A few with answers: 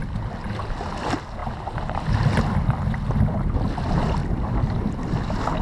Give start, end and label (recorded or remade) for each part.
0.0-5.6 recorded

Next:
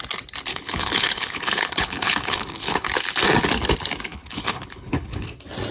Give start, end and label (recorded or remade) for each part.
0.0-0.5 recorded; 0.5-2.9 remade; 2.9-4.1 recorded; 4.1-5.3 remade; 5.3-5.7 recorded

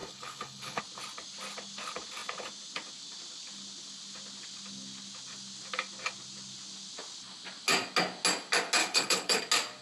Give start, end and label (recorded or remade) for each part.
0.0-0.8 remade; 0.8-8.8 recorded; 8.8-9.4 remade; 9.4-9.8 recorded

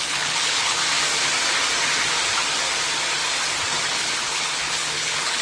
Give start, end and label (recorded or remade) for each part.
0.0-0.8 remade; 0.8-4.0 recorded; 4.0-5.4 remade

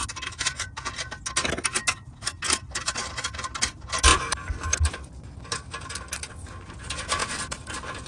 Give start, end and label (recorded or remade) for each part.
0.0-8.1 recorded